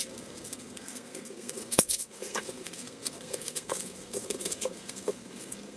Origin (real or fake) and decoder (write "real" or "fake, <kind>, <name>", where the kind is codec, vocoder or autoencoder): fake, codec, SNAC